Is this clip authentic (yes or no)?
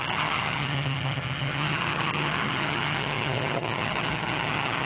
no